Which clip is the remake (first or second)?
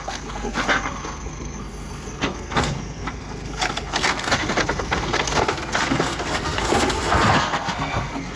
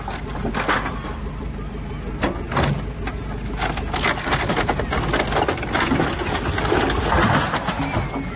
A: first